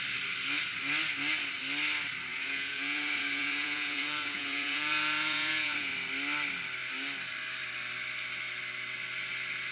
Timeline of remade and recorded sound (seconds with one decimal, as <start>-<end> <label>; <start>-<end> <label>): 0.0-2.3 recorded; 2.3-5.9 remade; 5.9-9.7 recorded